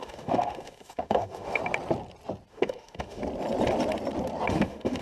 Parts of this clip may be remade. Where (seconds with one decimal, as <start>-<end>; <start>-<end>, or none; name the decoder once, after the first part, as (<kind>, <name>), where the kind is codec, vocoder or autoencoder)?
0.0-1.6 (autoencoder, DAC-VAE); 2.5-3.2; 4.5-5.0

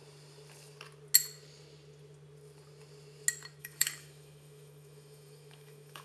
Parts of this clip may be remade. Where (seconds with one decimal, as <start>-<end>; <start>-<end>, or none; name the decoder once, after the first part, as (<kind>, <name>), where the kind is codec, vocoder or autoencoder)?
3.6-6.0 (autoencoder, DAC-VAE)